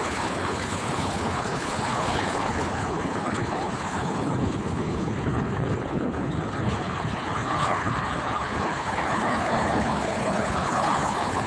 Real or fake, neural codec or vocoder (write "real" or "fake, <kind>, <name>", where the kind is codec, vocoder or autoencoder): fake, codec, HILCodec